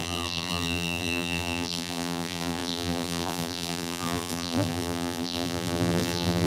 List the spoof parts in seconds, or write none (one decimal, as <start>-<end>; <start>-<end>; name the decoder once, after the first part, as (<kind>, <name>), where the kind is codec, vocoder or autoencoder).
0.0-6.5 (vocoder, BigVGAN v2)